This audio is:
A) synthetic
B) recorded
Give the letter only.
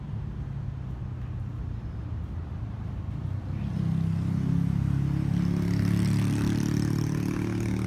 B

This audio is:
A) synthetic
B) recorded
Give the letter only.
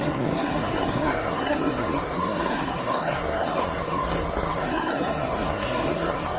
A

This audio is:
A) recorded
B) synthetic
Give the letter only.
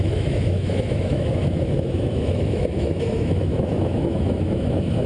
B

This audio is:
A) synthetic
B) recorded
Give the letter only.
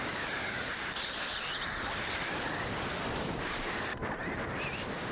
B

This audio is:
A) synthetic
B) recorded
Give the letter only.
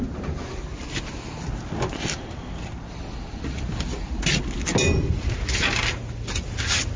B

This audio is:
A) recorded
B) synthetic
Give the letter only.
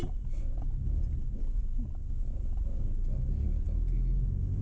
A